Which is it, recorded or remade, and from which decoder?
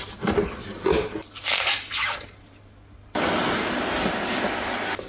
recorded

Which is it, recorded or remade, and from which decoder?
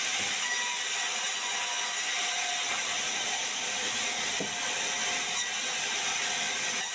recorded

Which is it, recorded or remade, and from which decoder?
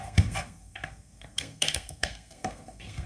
remade, codec, SNAC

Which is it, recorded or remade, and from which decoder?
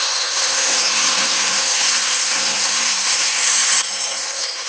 remade, codec, SNAC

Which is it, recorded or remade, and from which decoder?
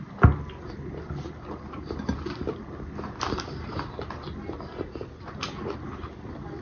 recorded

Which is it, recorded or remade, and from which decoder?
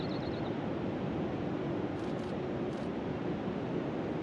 recorded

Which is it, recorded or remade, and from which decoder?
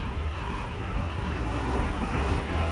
remade, codec, SNAC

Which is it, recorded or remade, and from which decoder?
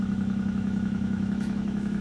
remade, autoencoder, DAC-VAE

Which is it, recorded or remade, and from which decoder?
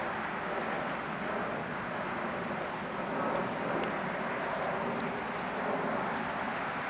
recorded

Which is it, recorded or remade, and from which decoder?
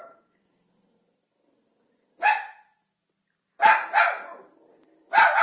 recorded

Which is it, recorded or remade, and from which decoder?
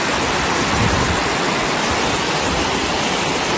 recorded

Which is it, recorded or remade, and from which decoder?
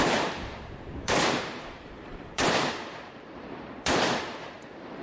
remade, vocoder, BigVGAN v2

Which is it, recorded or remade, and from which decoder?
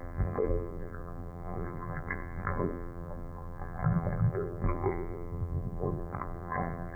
remade, vocoder, BigVGAN v2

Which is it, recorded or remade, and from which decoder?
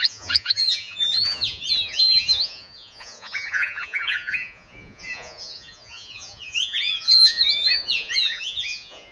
remade, vocoder, Vocos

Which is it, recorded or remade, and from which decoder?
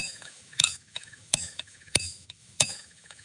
remade, autoencoder, DAC-VAE